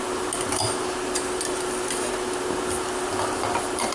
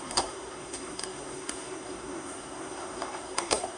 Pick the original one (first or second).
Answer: first